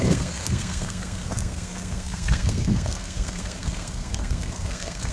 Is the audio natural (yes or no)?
no